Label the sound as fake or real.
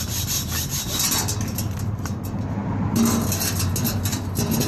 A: real